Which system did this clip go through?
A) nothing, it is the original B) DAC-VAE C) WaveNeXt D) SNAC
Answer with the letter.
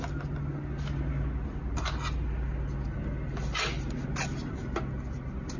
A